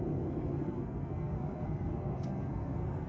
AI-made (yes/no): yes